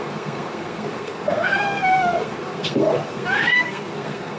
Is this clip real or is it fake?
fake